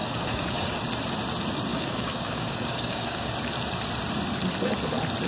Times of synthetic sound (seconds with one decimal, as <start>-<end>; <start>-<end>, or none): 0.0-0.8; 1.7-3.3